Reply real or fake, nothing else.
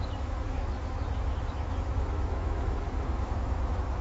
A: fake